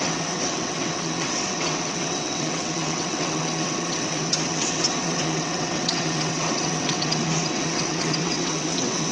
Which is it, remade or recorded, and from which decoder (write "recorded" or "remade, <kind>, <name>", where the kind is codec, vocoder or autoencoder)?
remade, vocoder, WaveNeXt